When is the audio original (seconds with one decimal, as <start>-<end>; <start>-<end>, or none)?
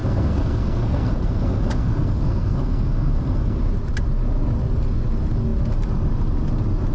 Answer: 3.6-6.9